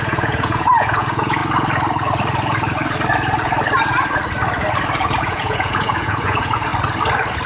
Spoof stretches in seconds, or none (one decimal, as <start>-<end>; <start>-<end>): 0.0-1.4; 5.2-6.7